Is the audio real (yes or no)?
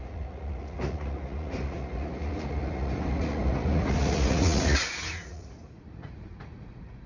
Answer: no